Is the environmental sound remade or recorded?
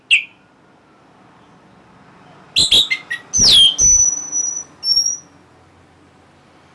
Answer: recorded